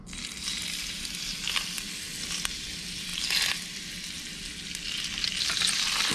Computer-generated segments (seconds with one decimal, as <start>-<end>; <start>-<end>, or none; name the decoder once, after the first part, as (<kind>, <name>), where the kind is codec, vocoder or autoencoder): none